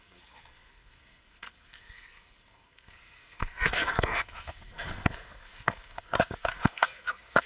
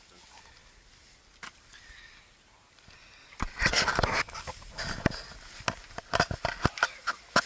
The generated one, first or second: first